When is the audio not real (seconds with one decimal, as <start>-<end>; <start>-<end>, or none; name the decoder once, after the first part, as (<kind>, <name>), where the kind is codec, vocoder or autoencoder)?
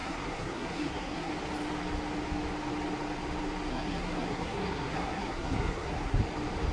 0.0-1.3 (codec, SNAC); 3.7-6.2